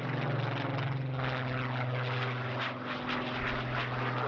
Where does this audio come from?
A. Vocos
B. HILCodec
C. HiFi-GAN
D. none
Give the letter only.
D